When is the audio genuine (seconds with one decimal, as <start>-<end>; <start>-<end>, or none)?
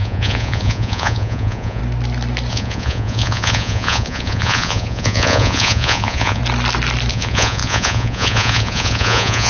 1.8-2.5; 6.4-7.1